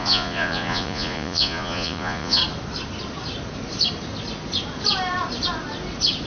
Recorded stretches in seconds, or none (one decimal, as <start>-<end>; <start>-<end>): 2.4-6.3